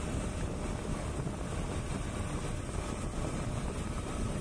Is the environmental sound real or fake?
real